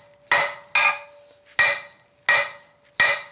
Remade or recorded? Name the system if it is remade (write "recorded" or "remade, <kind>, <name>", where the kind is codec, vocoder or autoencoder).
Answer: recorded